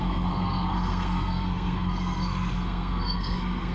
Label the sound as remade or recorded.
remade